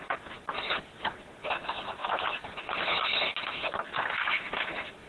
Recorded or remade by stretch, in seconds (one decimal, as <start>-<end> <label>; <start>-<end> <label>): 0.0-5.1 recorded

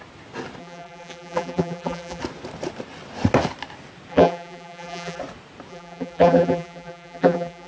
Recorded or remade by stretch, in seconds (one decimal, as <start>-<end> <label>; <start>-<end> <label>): 0.0-0.6 recorded; 0.6-2.2 remade; 2.2-4.1 recorded; 4.1-5.2 remade; 5.2-5.7 recorded; 5.7-7.7 remade

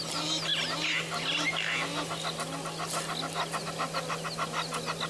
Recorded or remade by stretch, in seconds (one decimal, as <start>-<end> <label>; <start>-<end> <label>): 0.0-5.1 recorded